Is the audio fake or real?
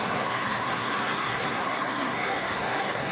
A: fake